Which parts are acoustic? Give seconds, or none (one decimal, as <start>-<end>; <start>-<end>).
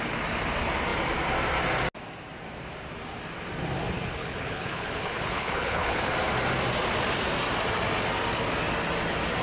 0.0-4.2; 6.1-9.4